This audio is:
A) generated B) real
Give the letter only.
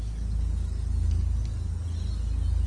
B